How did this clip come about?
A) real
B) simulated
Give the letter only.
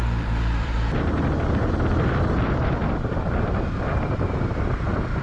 B